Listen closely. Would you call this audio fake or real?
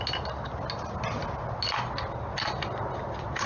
real